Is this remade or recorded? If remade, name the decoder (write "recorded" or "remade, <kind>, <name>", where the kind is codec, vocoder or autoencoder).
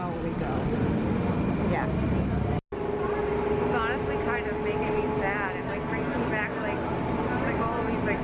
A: recorded